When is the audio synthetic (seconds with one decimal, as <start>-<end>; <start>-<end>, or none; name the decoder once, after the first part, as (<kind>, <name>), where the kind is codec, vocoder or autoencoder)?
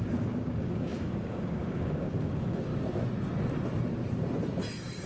0.0-2.7 (codec, DAC)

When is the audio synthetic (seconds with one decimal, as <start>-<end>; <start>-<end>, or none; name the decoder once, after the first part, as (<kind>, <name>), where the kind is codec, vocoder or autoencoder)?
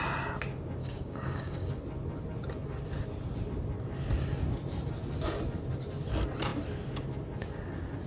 0.8-1.7 (codec, DAC)